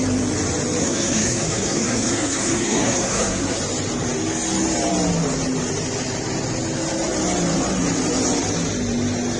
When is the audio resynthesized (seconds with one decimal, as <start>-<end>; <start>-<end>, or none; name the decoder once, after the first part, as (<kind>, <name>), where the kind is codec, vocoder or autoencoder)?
0.8-3.6 (codec, SNAC)